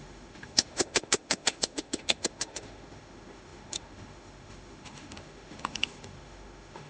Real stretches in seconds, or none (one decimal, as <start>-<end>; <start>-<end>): none